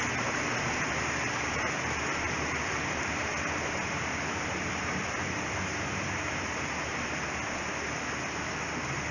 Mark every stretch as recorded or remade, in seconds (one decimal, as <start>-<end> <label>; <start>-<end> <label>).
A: 0.0-9.1 recorded